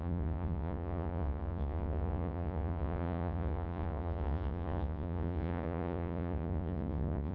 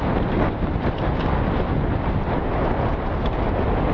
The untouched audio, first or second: second